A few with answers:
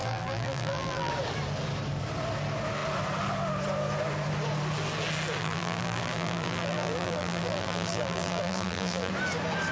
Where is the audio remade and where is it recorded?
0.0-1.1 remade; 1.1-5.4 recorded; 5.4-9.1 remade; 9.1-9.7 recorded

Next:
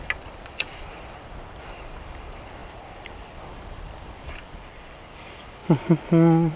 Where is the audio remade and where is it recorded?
0.0-5.6 remade; 5.6-6.6 recorded

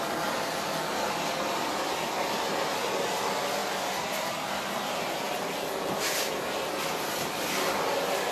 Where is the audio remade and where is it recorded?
0.0-8.3 recorded

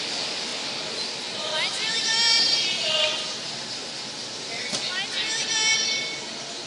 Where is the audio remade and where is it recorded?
0.0-6.7 recorded